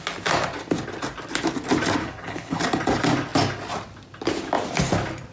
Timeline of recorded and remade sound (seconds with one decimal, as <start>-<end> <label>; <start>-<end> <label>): 0.0-2.0 recorded; 2.0-2.6 remade; 2.6-5.3 recorded